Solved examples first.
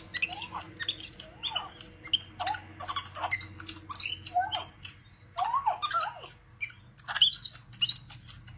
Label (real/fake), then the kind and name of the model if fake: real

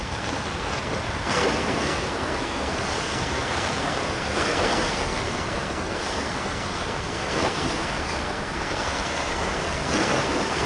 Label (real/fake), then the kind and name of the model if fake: fake, codec, SNAC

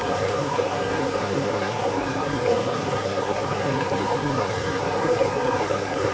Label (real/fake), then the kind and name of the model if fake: fake, codec, SNAC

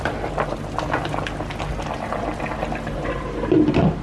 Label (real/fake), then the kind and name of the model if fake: real